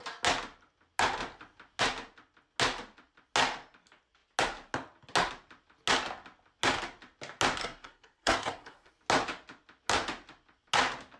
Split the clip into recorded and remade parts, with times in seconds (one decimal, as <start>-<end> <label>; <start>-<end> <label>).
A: 0.0-7.6 recorded; 7.6-8.9 remade; 8.9-11.2 recorded